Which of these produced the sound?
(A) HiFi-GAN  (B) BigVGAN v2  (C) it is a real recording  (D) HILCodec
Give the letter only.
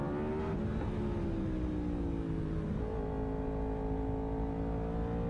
C